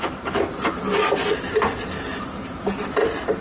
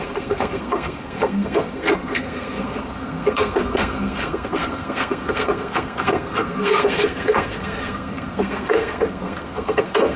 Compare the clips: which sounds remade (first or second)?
second